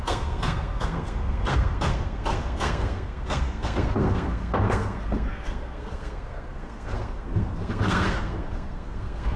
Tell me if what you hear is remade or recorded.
remade